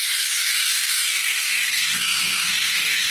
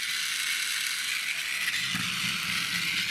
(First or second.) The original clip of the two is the second